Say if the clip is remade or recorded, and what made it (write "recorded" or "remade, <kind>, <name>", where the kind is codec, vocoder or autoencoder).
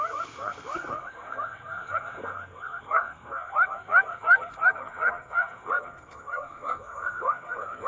remade, codec, SNAC